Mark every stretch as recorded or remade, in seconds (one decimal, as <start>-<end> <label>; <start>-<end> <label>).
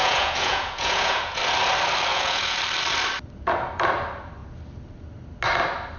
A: 0.0-1.4 remade; 1.4-2.1 recorded; 2.1-2.6 remade; 2.6-6.0 recorded